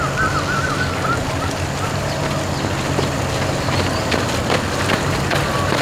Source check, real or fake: real